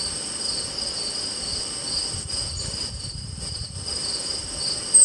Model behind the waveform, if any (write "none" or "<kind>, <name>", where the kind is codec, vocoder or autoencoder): none